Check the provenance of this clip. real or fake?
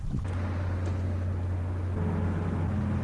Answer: real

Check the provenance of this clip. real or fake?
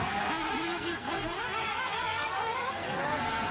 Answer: fake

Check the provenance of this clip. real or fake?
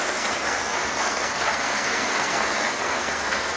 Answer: fake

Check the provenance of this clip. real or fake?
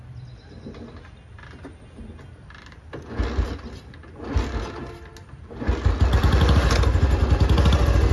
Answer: real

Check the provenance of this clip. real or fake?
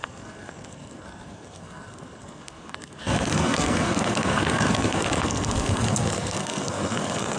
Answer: fake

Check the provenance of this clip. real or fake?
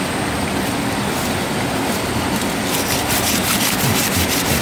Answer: real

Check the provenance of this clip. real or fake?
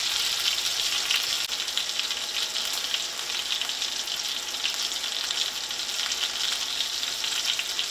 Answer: real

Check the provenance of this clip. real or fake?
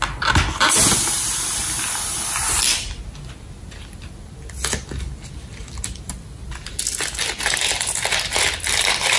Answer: real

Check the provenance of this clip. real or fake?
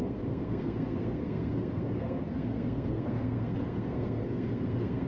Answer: fake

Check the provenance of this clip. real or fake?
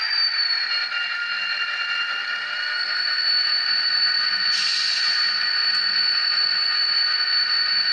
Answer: real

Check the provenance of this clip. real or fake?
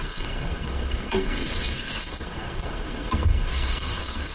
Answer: fake